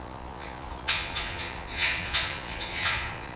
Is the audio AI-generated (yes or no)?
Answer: yes